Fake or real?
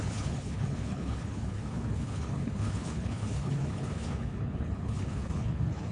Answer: fake